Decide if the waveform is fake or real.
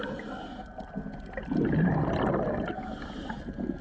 real